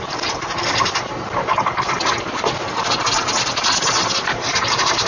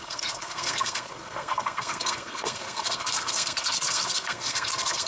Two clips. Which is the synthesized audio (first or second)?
second